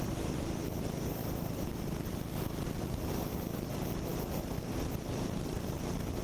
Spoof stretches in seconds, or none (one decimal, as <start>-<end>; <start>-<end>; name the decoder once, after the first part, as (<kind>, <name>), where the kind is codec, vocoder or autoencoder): 1.2-2.8 (vocoder, BigVGAN v2)